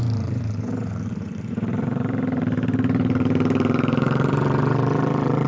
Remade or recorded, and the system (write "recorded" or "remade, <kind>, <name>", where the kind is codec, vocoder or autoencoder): remade, vocoder, BigVGAN v2